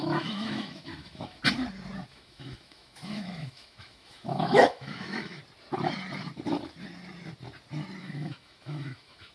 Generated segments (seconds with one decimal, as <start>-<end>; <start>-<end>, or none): 0.0-1.4; 2.1-5.4; 8.0-9.3

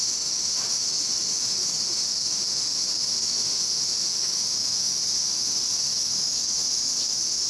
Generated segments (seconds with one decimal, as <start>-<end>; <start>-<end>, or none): 0.0-7.5

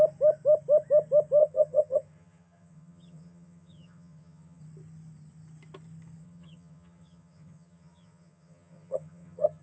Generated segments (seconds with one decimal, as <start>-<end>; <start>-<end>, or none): 1.4-4.6; 6.2-9.6

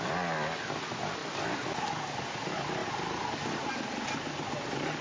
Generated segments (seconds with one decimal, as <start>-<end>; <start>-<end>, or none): none